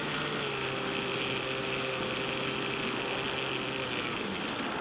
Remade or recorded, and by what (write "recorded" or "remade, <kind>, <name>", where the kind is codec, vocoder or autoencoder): recorded